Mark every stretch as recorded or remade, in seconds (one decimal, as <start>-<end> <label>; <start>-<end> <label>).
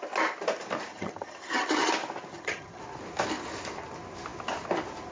0.0-0.9 recorded; 0.9-1.9 remade; 1.9-2.3 recorded; 2.3-2.8 remade; 2.8-5.1 recorded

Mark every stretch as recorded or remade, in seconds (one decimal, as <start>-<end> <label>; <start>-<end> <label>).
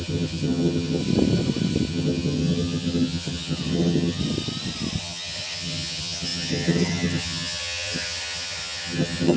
0.0-1.0 remade; 1.0-1.9 recorded; 1.9-4.2 remade; 4.2-5.0 recorded; 5.0-9.4 remade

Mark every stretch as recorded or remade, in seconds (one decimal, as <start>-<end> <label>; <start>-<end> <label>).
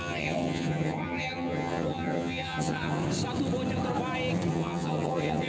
0.0-3.0 remade; 3.0-4.5 recorded; 4.5-5.5 remade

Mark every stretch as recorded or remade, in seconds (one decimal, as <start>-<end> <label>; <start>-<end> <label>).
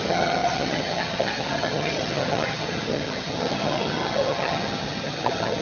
0.0-5.6 remade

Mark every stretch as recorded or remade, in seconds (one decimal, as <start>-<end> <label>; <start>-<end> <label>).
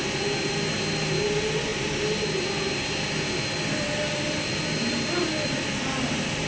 0.0-6.5 recorded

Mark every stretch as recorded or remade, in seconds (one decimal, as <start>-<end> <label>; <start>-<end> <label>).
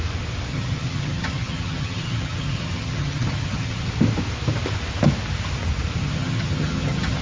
0.0-0.5 recorded; 0.5-3.9 remade; 3.9-6.0 recorded; 6.0-7.2 remade